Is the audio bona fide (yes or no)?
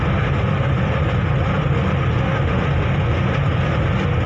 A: yes